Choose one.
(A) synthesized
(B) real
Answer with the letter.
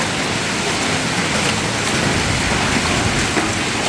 B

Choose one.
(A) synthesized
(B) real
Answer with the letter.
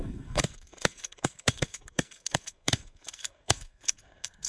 A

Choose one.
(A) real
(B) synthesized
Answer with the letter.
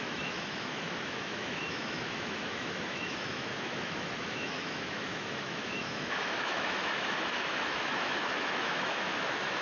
B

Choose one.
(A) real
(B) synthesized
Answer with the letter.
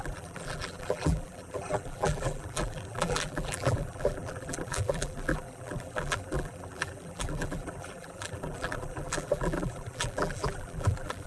B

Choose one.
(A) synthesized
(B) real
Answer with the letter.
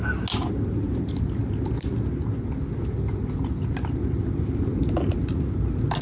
B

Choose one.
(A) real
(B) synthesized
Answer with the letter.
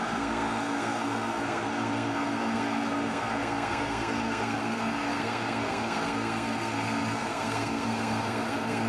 B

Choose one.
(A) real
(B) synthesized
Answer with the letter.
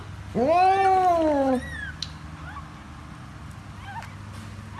A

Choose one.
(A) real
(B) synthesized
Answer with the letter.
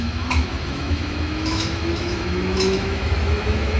B